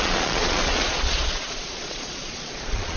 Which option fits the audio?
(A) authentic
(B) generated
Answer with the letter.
B